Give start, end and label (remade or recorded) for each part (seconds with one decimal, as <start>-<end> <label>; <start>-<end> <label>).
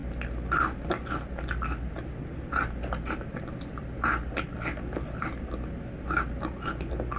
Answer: 0.0-7.2 recorded